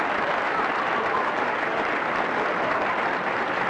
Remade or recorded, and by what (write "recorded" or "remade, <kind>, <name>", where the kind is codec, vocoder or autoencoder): recorded